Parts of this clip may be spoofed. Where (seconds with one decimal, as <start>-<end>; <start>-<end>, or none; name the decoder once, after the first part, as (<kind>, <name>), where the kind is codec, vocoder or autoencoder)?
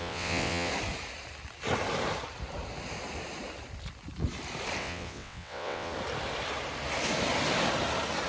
0.0-0.7 (vocoder, WaveNeXt); 4.8-5.9